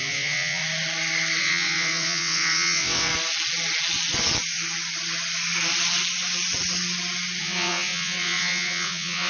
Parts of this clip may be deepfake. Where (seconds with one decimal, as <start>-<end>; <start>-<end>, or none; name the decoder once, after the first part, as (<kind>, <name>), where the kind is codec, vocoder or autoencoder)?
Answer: 0.0-0.6 (vocoder, WaveNeXt); 1.4-3.1; 7.4-9.3